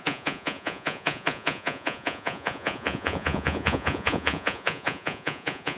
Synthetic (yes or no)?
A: yes